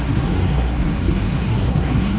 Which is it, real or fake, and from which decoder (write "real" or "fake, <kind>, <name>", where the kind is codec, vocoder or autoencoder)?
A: fake, codec, SNAC